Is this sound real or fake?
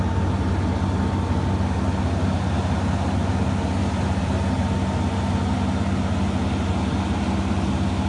real